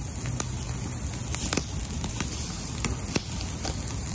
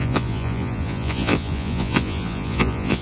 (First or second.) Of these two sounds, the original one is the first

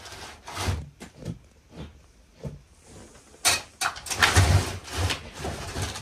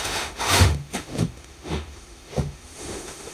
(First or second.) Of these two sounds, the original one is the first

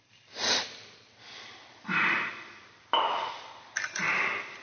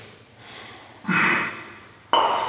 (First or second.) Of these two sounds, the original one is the second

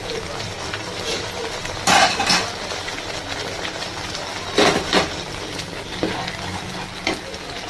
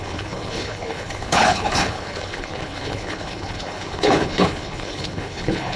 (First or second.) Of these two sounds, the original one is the first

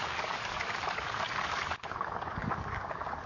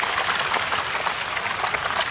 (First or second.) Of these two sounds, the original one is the second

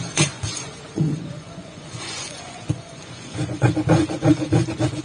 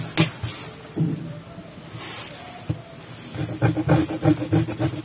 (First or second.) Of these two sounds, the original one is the second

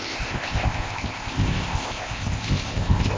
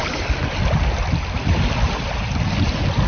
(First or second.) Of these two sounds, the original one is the second